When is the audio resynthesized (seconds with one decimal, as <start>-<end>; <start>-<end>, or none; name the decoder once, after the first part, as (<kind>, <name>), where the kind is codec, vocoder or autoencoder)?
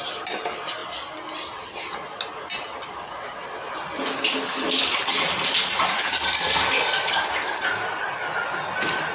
none